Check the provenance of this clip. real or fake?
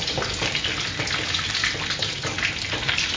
real